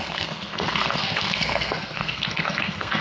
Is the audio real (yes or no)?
no